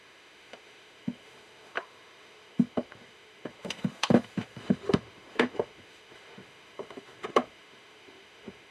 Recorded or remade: remade